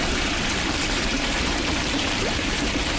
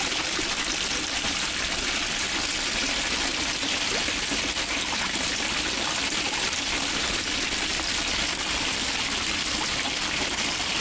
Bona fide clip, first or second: second